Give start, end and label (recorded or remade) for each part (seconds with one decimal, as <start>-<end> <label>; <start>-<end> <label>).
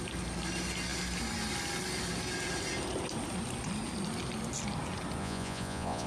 0.0-5.2 recorded; 5.2-6.1 remade